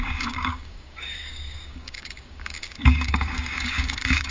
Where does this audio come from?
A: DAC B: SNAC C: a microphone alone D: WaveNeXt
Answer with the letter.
A